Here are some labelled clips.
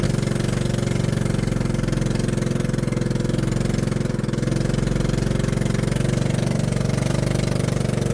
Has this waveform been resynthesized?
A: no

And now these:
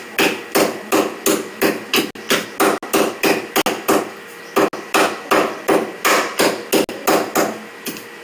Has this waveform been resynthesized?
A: no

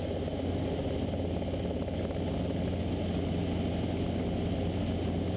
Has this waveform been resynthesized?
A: no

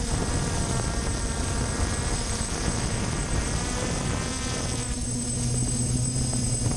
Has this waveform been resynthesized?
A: no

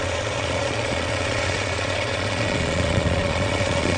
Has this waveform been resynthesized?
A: yes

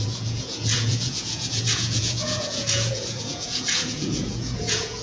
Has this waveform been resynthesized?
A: yes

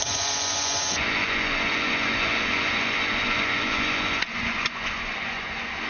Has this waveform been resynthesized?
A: yes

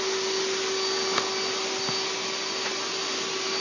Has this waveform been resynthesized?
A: no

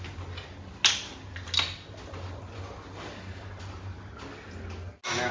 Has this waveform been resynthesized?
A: no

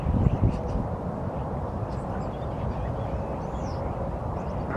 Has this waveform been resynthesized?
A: no